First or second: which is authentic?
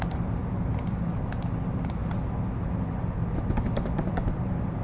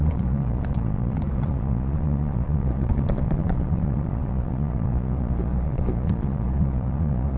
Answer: first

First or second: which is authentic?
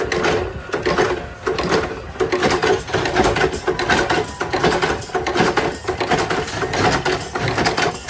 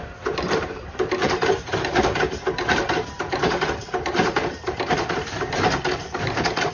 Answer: first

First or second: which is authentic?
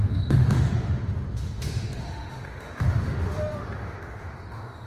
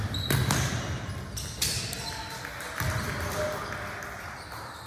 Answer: second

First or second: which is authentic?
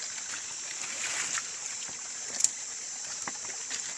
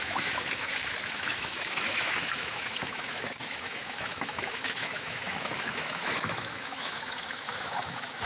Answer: first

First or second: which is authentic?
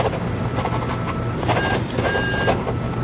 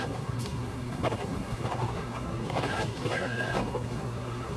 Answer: first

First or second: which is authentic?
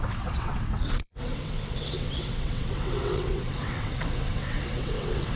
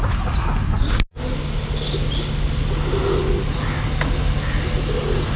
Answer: second